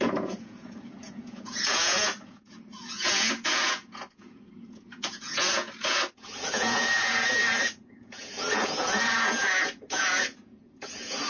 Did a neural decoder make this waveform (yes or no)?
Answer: yes